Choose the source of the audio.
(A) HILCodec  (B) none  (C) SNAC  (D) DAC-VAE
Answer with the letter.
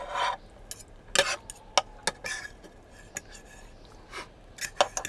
B